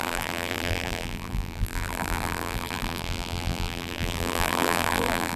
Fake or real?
fake